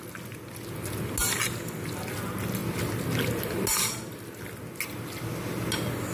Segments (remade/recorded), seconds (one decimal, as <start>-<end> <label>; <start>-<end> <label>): 0.0-6.1 recorded